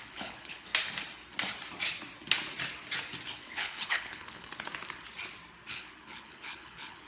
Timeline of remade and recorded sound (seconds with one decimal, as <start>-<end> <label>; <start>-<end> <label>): 0.0-0.7 remade; 0.7-3.3 recorded; 3.3-4.5 remade; 4.5-5.7 recorded; 5.7-7.1 remade